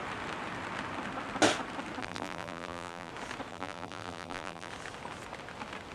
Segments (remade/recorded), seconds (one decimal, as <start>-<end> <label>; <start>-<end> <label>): 0.0-2.0 recorded; 2.0-3.1 remade; 3.1-3.5 recorded; 3.5-4.7 remade; 4.7-5.9 recorded